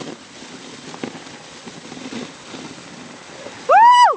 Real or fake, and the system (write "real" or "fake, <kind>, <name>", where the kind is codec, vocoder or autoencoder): real